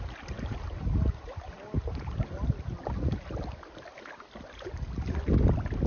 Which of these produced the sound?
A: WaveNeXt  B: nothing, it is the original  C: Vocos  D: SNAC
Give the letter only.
B